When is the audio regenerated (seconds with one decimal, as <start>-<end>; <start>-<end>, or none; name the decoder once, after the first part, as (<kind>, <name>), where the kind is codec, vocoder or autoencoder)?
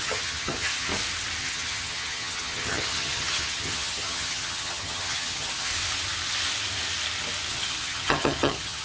0.0-0.9 (vocoder, HiFi-GAN); 1.4-5.7; 7.5-8.8